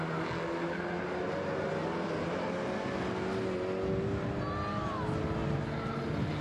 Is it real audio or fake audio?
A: real